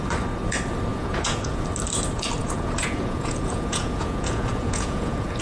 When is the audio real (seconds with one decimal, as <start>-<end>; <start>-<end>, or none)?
0.0-0.9; 1.6-2.4